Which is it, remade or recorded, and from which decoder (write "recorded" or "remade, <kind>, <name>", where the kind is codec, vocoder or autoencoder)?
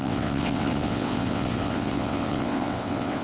remade, vocoder, WaveNeXt